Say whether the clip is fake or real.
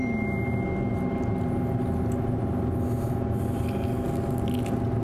real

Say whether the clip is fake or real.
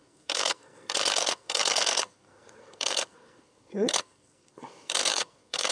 fake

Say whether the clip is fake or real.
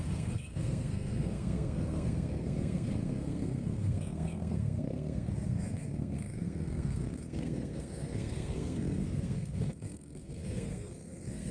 fake